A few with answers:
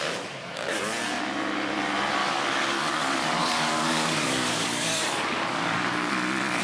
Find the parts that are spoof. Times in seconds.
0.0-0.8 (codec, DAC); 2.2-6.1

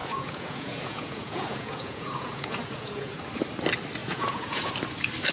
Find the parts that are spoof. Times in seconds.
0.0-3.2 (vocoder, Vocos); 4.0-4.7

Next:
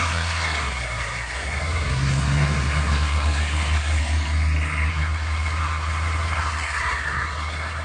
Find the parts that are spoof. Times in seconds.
0.0-4.0 (codec, SNAC); 4.9-7.8